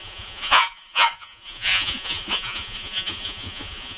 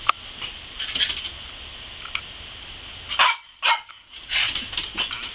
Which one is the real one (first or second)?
second